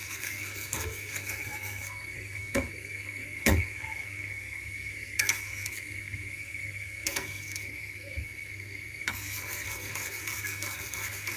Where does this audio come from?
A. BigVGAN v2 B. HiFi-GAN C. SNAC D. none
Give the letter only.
C